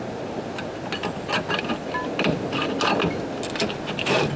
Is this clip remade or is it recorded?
recorded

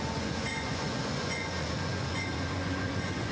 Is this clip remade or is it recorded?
remade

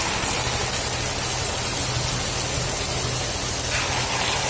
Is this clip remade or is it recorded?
recorded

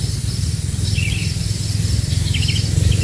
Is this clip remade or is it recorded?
recorded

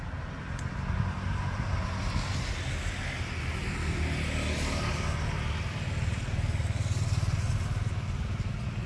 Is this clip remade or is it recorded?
recorded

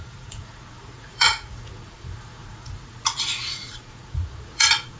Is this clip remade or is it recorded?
remade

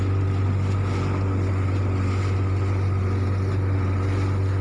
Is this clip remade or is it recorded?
recorded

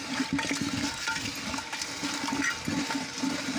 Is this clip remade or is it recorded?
recorded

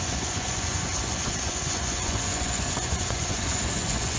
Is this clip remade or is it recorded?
remade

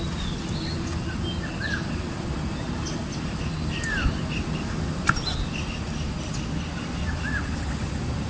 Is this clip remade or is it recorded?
recorded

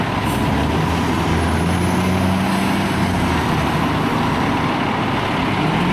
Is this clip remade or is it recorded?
recorded